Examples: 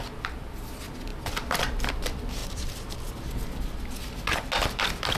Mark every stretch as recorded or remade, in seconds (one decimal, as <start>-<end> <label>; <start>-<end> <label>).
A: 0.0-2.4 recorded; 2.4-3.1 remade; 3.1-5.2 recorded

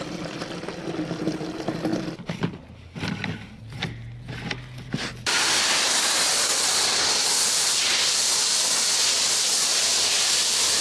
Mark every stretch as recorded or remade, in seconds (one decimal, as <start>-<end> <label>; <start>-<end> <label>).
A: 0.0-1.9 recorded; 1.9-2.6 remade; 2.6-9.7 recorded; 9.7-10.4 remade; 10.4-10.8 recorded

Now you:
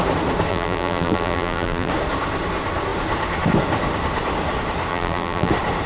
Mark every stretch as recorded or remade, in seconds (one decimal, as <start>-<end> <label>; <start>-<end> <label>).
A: 0.0-0.5 recorded; 0.5-1.9 remade; 1.9-4.9 recorded; 4.9-5.5 remade; 5.5-5.9 recorded

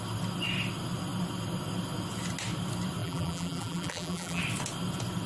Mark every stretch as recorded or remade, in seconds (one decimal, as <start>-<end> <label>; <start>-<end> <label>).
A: 0.0-3.0 recorded; 3.0-4.4 remade; 4.4-5.3 recorded

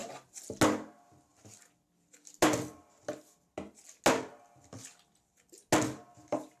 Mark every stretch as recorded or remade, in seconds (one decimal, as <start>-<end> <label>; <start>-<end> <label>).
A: 0.0-6.6 recorded

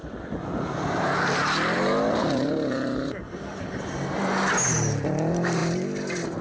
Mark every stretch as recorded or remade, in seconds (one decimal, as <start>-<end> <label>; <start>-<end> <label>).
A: 0.0-3.8 remade; 3.8-6.4 recorded